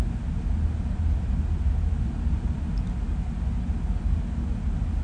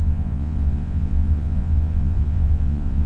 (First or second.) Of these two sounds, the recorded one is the first